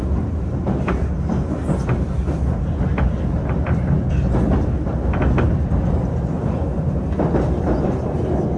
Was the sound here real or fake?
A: real